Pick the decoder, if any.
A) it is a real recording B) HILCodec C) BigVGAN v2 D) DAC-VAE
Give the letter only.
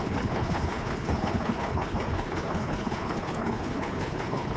B